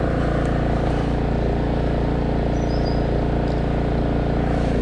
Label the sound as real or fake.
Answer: real